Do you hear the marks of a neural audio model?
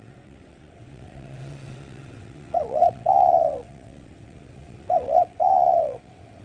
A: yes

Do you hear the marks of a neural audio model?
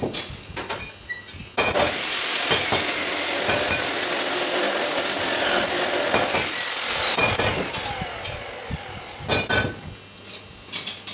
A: no